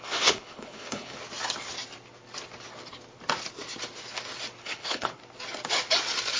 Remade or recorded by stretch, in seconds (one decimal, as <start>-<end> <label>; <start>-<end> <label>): 0.0-1.2 remade; 1.2-4.6 recorded; 4.6-5.2 remade; 5.2-6.4 recorded